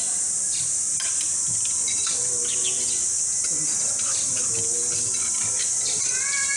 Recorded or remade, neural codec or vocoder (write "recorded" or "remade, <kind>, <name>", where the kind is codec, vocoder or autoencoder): recorded